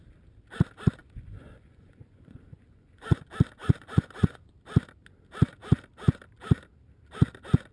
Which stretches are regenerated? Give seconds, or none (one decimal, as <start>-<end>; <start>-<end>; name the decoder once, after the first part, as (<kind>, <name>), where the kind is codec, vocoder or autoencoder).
1.0-3.2 (vocoder, Vocos); 3.6-4.5